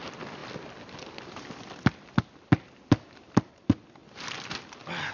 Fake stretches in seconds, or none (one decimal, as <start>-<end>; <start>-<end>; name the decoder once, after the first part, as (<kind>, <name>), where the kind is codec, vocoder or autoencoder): none

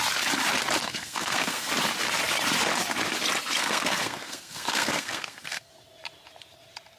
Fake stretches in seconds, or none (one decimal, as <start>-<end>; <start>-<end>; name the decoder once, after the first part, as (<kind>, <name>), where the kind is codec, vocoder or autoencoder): 0.8-1.7 (codec, SNAC); 3.6-5.7